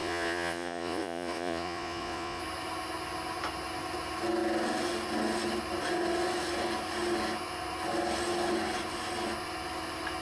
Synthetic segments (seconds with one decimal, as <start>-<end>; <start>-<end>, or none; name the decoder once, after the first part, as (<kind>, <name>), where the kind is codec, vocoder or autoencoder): 0.0-2.4 (vocoder, Vocos)